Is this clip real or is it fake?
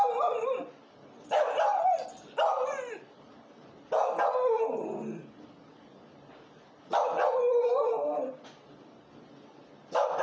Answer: real